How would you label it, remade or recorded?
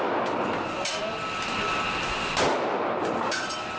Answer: recorded